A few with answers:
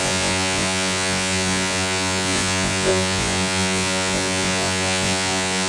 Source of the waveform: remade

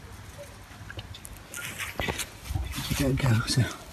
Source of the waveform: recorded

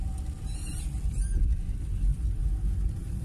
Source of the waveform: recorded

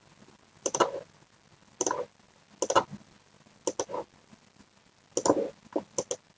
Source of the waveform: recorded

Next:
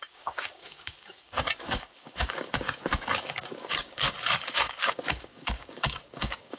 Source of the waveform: remade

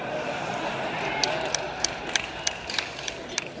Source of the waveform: recorded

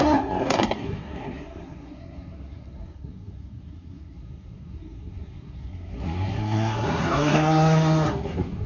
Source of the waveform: remade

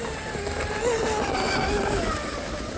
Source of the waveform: recorded